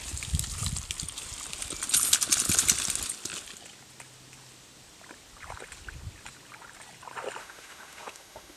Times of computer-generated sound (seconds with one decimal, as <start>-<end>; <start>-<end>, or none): 7.4-8.6

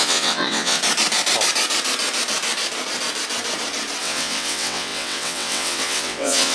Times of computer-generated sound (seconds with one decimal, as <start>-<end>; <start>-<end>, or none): 0.0-0.8; 4.0-6.5

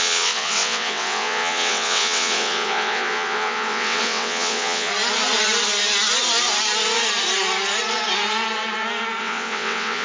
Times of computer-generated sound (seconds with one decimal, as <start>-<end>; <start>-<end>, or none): 0.0-4.9; 9.2-10.0

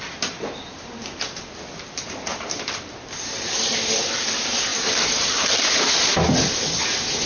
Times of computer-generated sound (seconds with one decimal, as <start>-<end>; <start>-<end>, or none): 2.3-4.2; 4.7-5.9

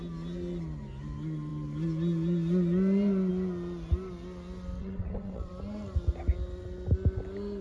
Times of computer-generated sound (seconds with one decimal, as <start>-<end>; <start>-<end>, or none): 4.8-5.5

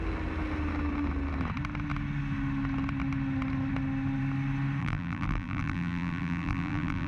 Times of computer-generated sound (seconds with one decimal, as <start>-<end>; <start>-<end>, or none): 4.8-7.1

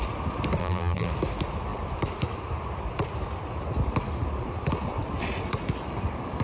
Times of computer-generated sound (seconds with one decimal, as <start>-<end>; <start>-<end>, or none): 0.6-1.1

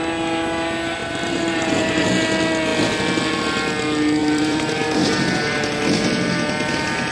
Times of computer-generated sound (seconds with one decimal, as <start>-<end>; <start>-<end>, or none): 1.0-2.1; 4.2-5.8